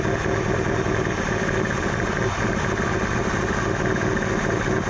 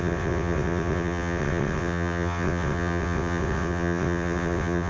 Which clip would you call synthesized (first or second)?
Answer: second